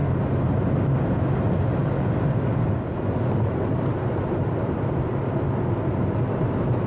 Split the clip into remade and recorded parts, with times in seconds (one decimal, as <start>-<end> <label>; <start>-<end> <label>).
0.0-6.9 recorded